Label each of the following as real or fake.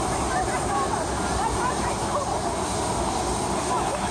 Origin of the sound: real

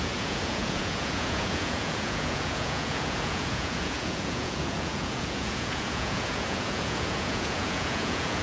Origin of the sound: fake